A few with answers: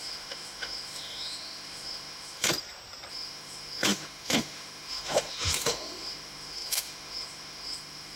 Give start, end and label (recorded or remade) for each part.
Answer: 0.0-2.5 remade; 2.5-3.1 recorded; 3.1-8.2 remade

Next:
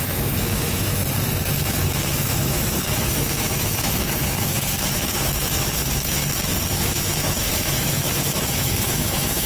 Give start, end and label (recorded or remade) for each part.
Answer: 0.0-1.0 remade; 1.0-1.5 recorded; 1.5-6.2 remade; 6.2-6.7 recorded; 6.7-9.5 remade

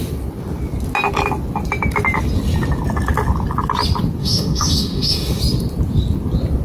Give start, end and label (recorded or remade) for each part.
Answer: 0.0-4.2 recorded; 4.2-5.4 remade; 5.4-6.6 recorded

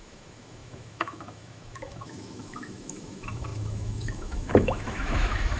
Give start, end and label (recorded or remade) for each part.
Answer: 0.0-5.6 remade

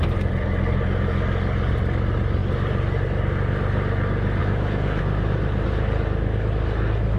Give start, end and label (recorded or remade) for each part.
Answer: 0.0-4.4 recorded; 4.4-5.0 remade; 5.0-7.2 recorded

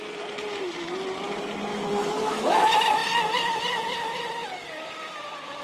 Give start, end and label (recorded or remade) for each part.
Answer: 0.0-1.7 recorded; 1.7-2.6 remade; 2.6-5.6 recorded

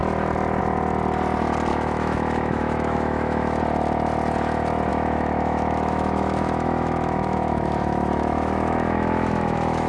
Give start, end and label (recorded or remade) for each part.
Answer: 0.0-1.7 recorded; 1.7-3.6 remade; 3.6-4.9 recorded; 4.9-9.9 remade